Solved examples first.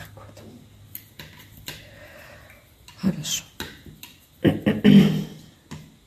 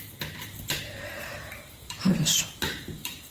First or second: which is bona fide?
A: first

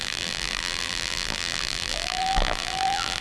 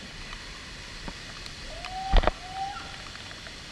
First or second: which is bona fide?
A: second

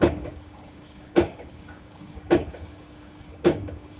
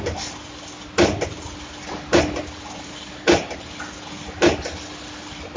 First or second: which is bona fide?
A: second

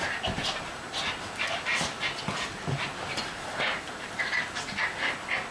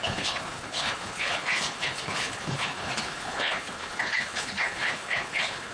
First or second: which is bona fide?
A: first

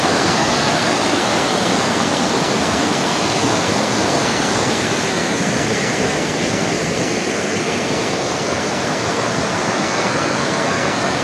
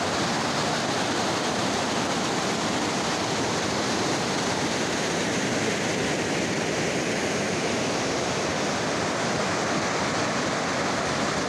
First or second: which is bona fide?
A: second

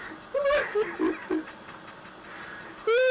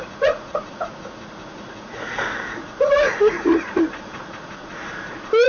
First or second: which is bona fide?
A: first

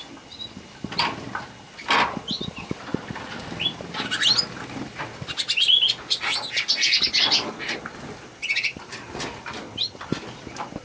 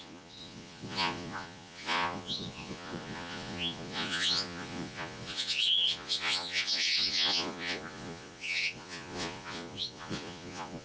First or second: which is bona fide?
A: first